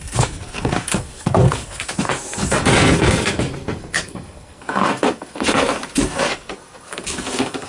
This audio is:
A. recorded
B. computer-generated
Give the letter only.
B